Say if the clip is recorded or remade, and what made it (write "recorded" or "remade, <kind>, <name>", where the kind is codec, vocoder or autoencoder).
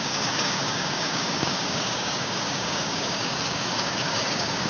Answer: remade, codec, DAC